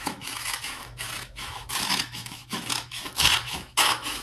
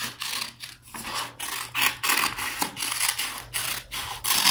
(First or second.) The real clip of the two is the second